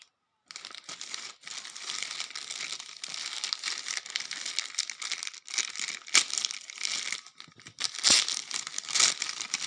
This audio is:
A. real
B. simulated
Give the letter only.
A